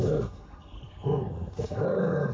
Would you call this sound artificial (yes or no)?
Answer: yes